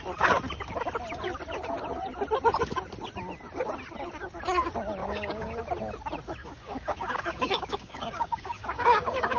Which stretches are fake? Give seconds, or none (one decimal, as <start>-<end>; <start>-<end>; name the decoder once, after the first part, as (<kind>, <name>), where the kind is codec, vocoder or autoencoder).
5.0-5.6 (codec, DAC); 6.4-9.4